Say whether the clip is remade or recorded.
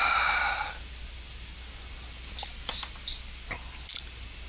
recorded